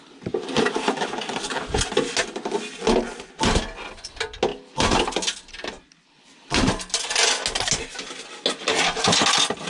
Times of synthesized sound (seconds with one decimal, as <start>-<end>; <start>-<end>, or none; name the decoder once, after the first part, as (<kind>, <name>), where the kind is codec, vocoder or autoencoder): none